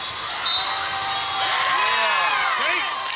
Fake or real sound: real